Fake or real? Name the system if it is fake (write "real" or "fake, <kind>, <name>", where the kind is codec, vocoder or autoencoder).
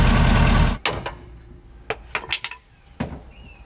real